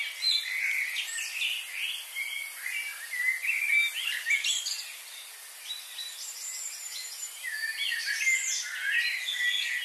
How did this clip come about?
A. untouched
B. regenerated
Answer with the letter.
A